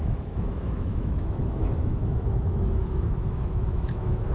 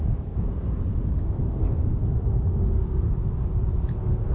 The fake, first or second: first